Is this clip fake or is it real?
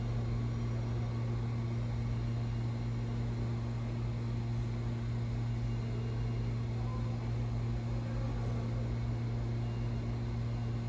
real